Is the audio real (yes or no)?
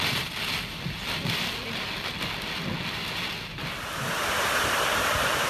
yes